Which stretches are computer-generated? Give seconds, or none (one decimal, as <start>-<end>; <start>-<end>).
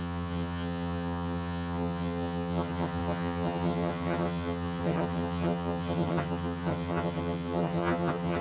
0.0-8.4